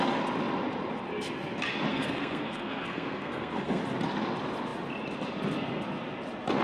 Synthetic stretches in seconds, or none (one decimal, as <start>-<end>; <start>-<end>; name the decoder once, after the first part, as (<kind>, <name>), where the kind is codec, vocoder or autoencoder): 1.9-3.8 (codec, SNAC)